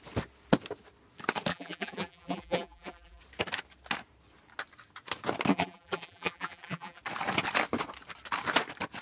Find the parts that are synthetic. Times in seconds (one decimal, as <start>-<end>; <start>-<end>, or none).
1.5-3.2; 5.5-7.0